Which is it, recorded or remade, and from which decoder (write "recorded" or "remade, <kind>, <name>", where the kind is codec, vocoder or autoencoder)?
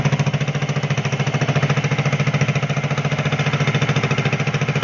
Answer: recorded